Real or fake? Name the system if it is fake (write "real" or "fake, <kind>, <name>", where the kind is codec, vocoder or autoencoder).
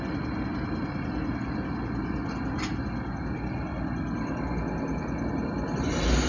real